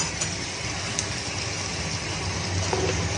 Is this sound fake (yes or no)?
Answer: no